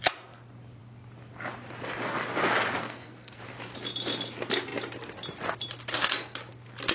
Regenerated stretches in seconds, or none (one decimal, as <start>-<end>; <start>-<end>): 2.8-3.4